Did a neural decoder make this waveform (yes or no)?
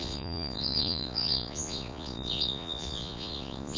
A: yes